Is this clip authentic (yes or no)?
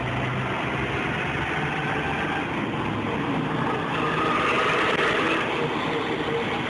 yes